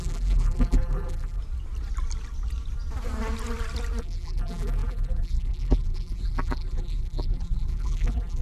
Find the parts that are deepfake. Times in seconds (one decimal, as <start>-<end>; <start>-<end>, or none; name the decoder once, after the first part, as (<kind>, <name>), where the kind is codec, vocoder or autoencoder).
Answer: 0.0-1.4 (vocoder, BigVGAN v2); 4.0-8.4